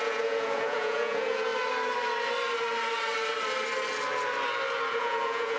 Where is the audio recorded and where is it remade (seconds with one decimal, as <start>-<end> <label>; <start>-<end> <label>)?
0.0-1.5 remade; 1.5-4.9 recorded; 4.9-5.6 remade